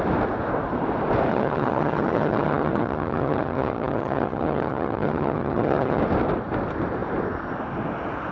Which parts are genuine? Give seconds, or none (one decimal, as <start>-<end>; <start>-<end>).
0.0-1.3; 6.0-8.3